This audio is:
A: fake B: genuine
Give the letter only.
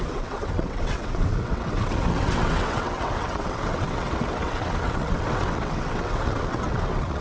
A